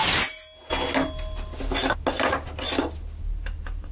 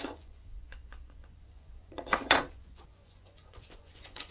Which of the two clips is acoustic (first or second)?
first